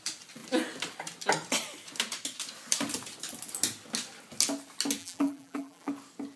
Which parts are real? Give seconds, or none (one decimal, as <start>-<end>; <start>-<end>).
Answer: 0.0-5.0; 5.9-6.4